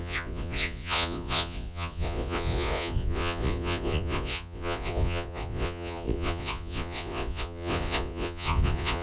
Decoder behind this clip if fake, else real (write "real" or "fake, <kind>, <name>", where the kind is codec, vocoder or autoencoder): fake, vocoder, Vocos